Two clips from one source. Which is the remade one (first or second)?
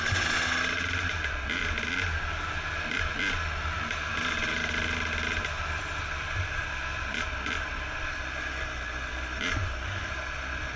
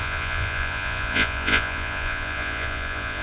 second